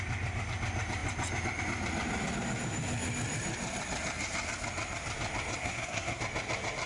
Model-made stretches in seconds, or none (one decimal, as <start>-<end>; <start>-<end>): 5.6-6.2